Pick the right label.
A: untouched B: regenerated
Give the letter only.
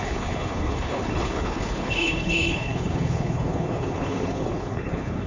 B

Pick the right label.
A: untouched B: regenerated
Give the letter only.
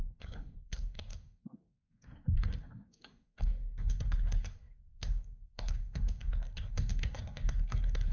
B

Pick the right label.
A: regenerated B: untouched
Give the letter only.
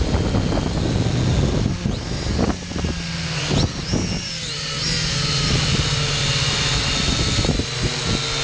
B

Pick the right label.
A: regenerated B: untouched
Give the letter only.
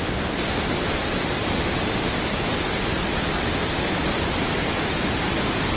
B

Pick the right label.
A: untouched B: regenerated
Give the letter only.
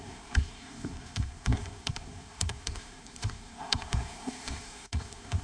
B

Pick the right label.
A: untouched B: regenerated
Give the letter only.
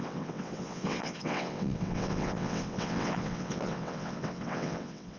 B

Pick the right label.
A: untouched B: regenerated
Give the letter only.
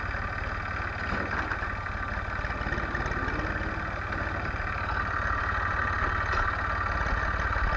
A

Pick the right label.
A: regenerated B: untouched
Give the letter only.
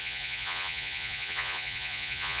A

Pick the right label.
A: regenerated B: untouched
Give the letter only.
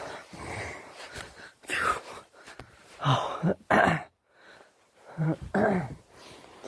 A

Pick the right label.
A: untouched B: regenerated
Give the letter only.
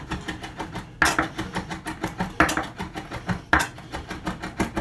A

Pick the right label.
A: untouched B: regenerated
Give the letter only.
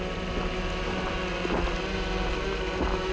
A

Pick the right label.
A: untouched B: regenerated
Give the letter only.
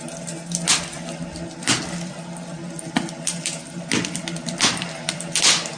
A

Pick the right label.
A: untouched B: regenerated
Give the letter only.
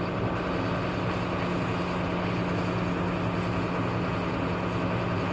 A